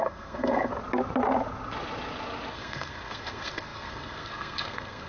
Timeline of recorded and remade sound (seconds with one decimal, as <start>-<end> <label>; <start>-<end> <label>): 0.0-0.7 remade; 0.7-2.5 recorded; 2.5-5.1 remade